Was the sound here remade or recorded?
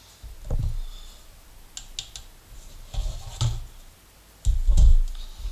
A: recorded